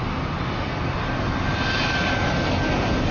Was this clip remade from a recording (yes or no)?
no